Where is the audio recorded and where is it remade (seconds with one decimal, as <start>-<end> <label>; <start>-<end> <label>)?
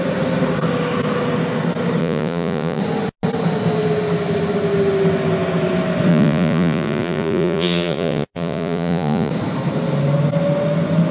0.0-2.0 recorded; 2.0-2.8 remade; 2.8-6.1 recorded; 6.1-9.3 remade; 9.3-11.1 recorded